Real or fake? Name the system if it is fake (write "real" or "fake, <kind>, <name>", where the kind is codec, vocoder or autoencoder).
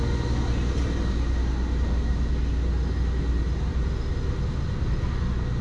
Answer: real